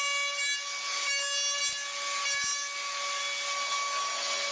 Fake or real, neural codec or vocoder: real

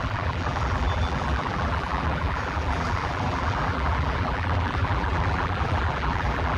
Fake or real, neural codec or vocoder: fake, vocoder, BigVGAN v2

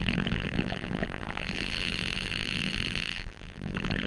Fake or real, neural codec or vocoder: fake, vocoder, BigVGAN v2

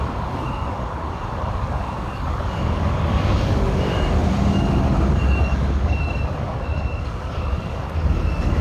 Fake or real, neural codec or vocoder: fake, codec, DAC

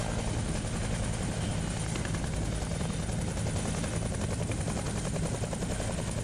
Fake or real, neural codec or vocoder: real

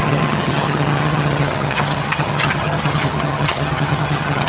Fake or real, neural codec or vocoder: fake, vocoder, HiFi-GAN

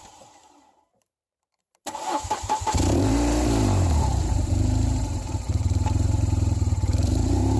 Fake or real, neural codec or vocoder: fake, vocoder, BigVGAN v2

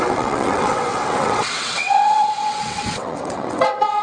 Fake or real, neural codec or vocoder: fake, vocoder, WaveNeXt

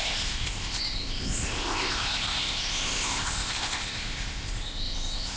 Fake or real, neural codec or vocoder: fake, codec, ZipCodec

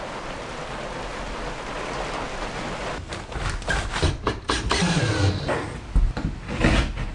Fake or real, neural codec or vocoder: real